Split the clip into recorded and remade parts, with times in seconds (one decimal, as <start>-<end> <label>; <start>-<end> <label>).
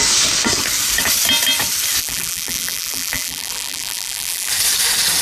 0.0-2.0 recorded; 2.0-4.5 remade; 4.5-5.2 recorded